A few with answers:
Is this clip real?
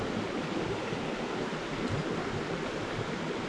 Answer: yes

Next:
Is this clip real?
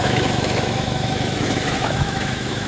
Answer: no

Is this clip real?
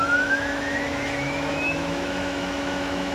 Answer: no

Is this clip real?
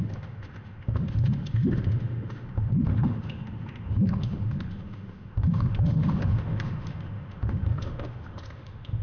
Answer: no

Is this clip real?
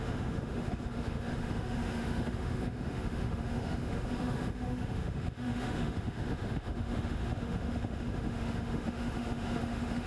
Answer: no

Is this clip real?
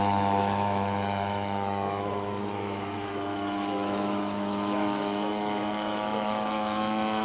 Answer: no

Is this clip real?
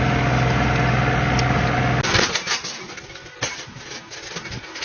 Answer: yes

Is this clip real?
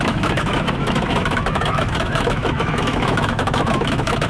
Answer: no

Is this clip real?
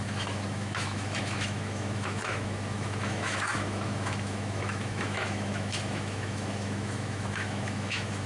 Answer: no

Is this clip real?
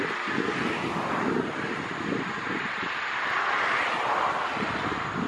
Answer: yes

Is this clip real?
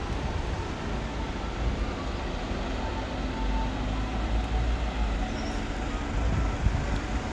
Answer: yes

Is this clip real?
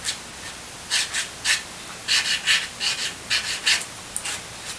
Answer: yes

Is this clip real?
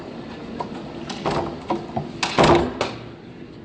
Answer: yes